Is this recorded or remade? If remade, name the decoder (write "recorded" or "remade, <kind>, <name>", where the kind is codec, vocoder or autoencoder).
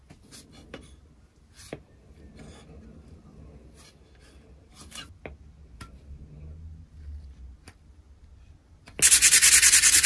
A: recorded